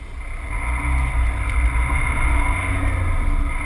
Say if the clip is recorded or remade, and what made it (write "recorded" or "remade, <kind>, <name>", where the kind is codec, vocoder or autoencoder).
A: recorded